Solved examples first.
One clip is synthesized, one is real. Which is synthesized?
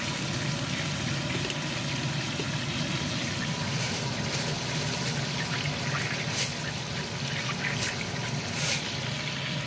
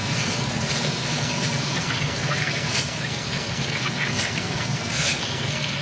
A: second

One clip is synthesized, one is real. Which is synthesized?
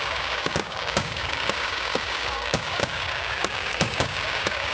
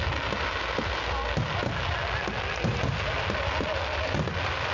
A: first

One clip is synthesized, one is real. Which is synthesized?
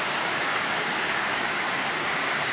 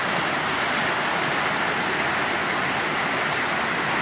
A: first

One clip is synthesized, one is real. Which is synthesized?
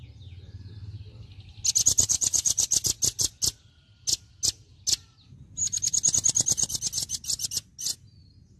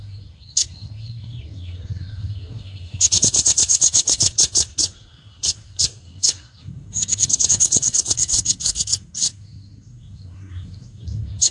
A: second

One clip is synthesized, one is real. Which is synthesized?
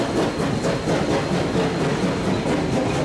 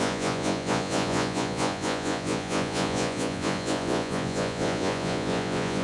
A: second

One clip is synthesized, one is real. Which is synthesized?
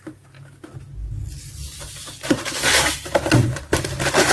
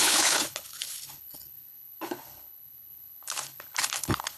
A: second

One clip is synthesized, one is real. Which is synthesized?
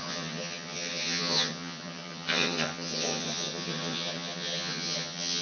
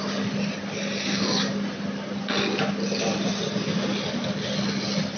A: first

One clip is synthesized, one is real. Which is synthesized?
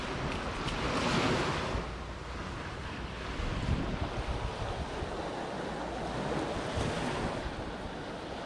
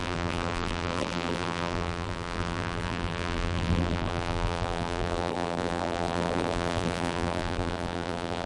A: second